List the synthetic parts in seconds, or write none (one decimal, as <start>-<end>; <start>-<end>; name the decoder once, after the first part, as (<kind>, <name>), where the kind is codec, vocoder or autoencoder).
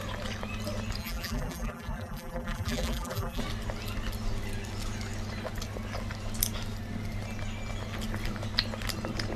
1.0-3.4 (vocoder, BigVGAN v2)